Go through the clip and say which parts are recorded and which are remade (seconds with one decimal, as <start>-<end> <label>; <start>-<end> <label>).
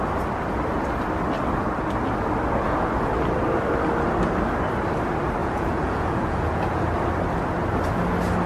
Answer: 0.0-5.4 recorded; 5.4-6.8 remade; 6.8-8.5 recorded